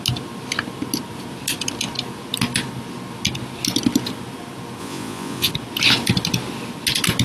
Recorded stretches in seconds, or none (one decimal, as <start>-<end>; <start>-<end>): 0.0-4.8; 5.5-7.2